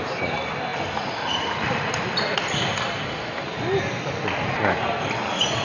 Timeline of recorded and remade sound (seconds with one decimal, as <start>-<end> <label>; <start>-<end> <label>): 0.0-5.6 recorded